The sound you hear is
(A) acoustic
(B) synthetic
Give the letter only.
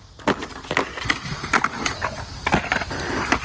A